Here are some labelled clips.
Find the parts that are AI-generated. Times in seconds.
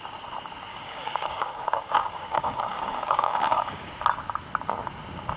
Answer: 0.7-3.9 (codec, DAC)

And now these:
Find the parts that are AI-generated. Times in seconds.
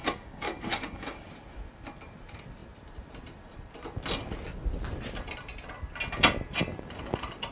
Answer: 0.0-1.3 (codec, DAC)